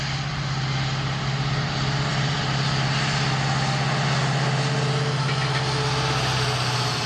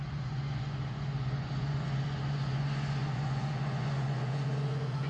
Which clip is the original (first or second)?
first